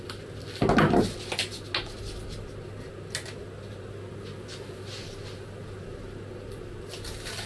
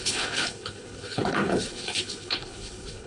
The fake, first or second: second